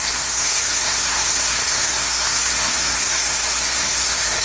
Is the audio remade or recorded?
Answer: remade